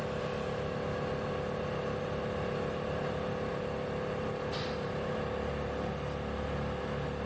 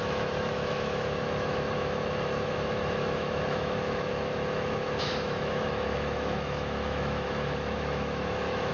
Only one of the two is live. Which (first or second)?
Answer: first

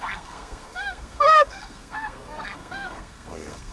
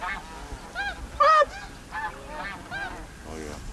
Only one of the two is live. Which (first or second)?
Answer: second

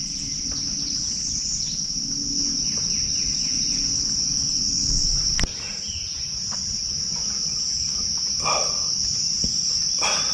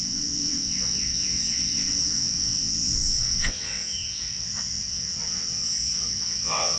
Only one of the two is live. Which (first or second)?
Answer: first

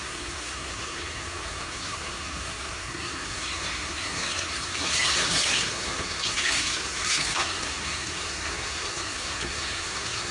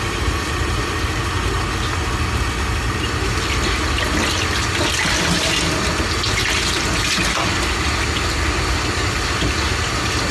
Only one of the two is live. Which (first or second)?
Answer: second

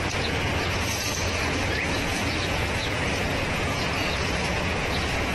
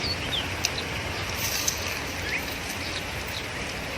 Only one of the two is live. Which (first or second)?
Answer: second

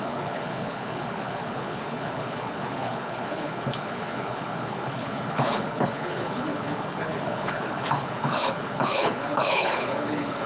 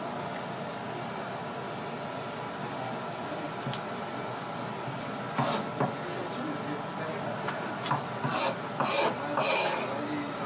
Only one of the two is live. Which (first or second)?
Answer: second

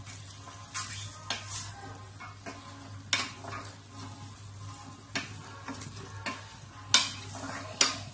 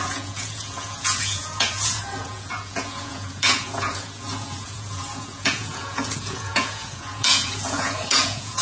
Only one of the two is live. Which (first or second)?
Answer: first